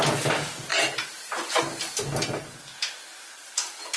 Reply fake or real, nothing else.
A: real